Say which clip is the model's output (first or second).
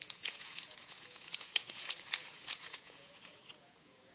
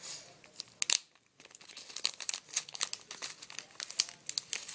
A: first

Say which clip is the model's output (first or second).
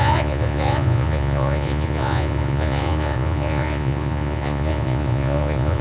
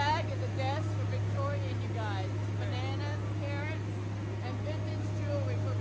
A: first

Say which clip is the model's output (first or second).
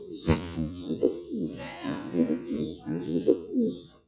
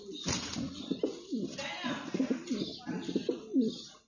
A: first